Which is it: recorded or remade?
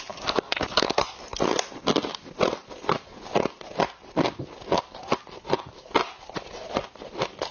recorded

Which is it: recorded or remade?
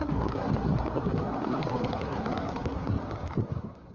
remade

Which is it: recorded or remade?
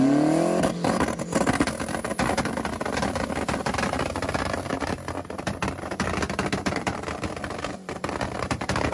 recorded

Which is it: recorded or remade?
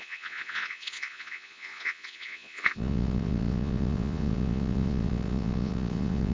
remade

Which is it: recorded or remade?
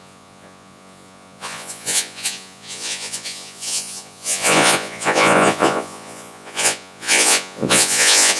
remade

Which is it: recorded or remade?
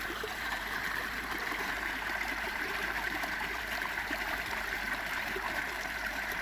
remade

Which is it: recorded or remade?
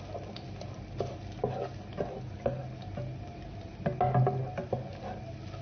recorded